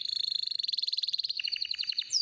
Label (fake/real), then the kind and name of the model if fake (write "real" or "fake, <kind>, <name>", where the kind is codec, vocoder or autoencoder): fake, vocoder, BigVGAN v2